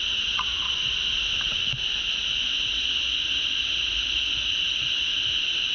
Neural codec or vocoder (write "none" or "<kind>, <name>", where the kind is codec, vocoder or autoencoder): none